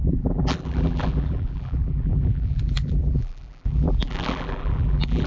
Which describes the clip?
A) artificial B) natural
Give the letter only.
A